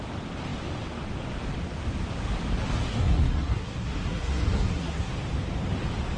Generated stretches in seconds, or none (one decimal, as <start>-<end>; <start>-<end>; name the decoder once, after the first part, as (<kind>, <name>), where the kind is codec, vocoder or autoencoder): 2.9-5.1 (codec, SNAC)